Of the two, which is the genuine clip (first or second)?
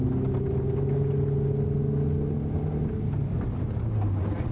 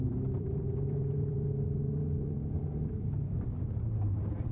first